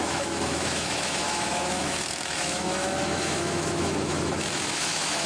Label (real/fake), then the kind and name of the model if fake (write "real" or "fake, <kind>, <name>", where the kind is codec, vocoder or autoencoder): fake, autoencoder, DAC-VAE